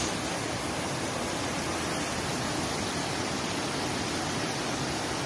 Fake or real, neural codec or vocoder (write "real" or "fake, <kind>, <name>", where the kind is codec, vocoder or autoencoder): real